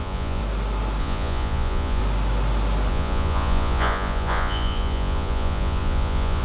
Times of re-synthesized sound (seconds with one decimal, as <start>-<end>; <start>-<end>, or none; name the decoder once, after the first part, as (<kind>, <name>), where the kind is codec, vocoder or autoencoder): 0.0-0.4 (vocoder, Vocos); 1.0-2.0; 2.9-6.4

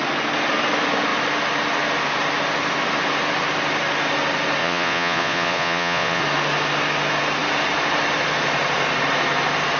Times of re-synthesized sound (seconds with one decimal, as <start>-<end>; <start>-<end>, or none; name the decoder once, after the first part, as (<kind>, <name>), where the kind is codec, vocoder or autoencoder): 4.6-6.2 (vocoder, Vocos)

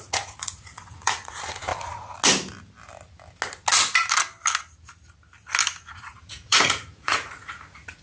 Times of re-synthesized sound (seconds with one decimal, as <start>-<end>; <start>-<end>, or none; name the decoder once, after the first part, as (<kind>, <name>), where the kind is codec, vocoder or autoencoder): 0.0-1.7 (vocoder, Vocos); 5.9-8.0

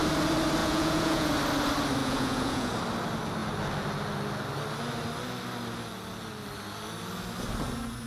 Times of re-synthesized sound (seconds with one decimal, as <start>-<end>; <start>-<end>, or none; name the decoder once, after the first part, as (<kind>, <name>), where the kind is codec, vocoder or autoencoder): 0.6-1.3 (vocoder, Vocos); 2.0-2.7

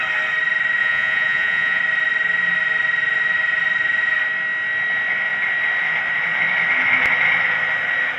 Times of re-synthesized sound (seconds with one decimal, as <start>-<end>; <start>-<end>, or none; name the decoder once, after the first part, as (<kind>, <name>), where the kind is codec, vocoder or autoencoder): 0.8-1.8 (vocoder, Vocos)